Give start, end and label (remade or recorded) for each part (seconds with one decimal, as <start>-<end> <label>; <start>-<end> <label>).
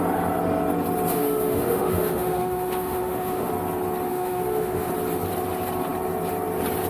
0.0-1.1 recorded; 1.1-3.5 remade; 3.5-4.1 recorded; 4.1-4.9 remade; 4.9-6.9 recorded